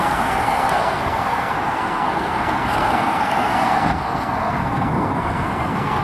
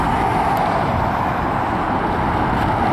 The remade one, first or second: first